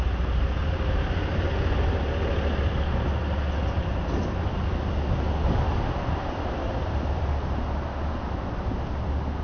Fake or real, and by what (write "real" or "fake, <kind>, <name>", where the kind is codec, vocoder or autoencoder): real